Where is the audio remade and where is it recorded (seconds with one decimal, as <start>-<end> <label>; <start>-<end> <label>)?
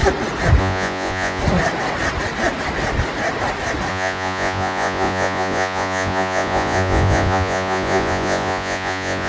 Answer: 0.0-0.6 recorded; 0.6-1.4 remade; 1.4-3.9 recorded; 3.9-9.3 remade